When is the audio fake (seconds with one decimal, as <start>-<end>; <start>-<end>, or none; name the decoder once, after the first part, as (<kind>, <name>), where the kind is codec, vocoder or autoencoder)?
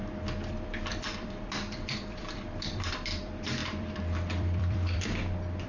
0.5-5.7 (vocoder, BigVGAN v2)